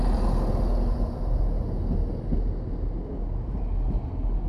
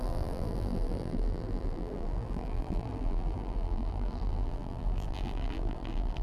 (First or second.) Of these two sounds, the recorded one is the first